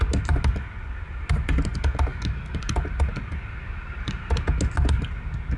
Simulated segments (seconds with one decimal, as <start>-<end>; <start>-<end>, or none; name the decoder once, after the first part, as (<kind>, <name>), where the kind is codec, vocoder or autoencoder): none